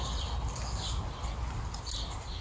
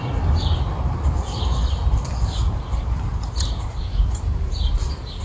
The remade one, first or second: second